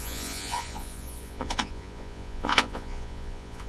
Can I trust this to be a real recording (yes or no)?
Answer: no